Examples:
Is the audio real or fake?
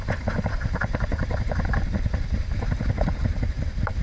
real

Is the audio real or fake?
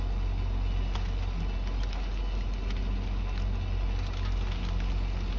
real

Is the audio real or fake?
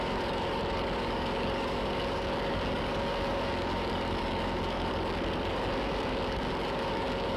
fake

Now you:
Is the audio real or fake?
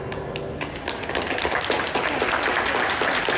real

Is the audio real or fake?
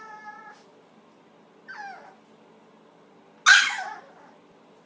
real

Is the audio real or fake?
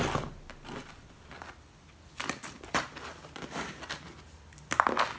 real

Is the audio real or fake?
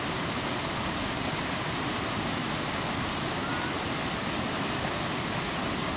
real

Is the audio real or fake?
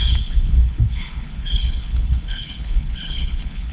fake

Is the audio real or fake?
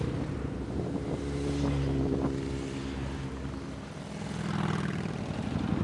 real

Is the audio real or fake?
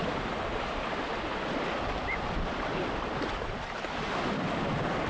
fake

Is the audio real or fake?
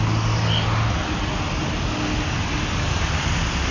real